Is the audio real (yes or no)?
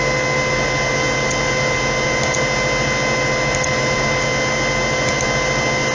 yes